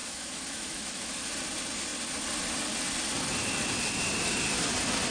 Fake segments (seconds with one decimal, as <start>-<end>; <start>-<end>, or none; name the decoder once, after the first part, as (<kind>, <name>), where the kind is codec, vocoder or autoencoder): 0.0-1.3 (autoencoder, DAC-VAE)